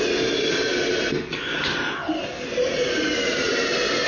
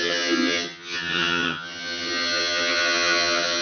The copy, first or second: second